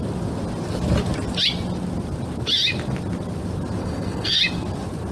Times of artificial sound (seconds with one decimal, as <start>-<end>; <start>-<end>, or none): 3.8-4.4